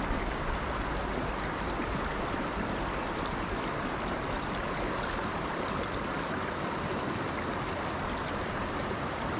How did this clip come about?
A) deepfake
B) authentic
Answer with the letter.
B